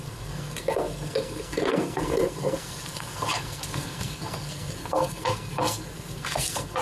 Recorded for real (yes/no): no